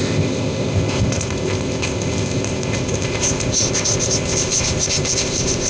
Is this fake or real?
fake